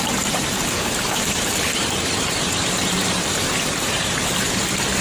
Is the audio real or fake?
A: fake